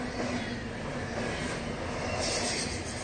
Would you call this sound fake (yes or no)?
no